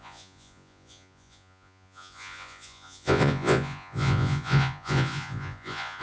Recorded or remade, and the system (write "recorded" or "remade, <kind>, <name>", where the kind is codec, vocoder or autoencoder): remade, vocoder, Vocos